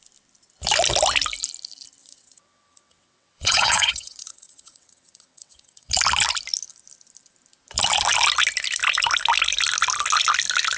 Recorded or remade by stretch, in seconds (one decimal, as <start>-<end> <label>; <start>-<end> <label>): 0.0-2.0 recorded; 2.0-5.9 remade; 5.9-10.8 recorded